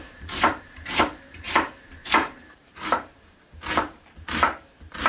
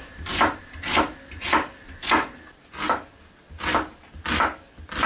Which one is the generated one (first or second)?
first